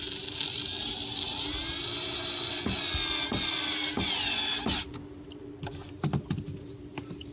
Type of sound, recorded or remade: recorded